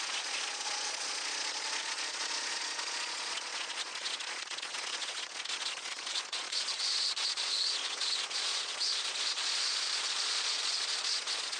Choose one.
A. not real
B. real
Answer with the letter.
A